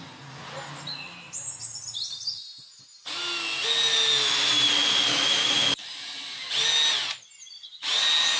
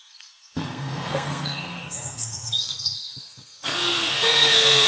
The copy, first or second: second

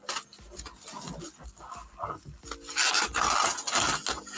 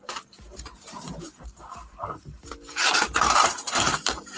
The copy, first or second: second